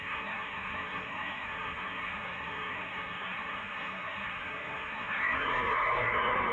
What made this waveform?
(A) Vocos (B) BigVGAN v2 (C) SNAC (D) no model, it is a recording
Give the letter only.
C